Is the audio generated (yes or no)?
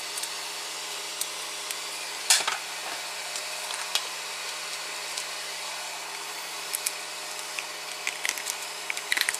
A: yes